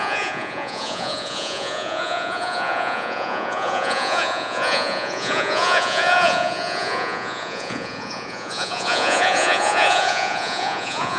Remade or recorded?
remade